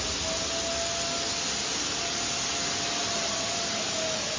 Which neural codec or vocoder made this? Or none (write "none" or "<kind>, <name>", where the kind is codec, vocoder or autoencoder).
none